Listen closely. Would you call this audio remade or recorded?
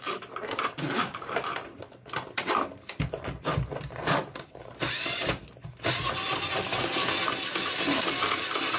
recorded